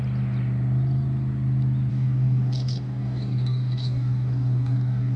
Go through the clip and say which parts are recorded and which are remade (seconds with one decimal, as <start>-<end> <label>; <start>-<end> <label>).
0.0-1.9 recorded; 1.9-5.2 remade